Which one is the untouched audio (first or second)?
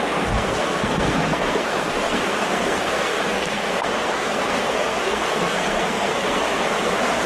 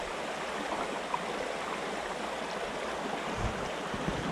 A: second